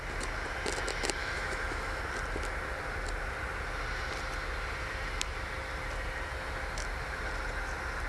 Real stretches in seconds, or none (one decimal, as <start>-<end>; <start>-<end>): 0.0-1.2; 2.0-8.1